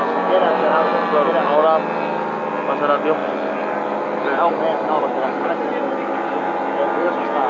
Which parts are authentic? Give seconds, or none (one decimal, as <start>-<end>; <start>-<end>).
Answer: 0.0-7.5